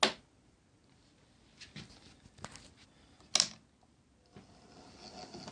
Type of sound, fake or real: real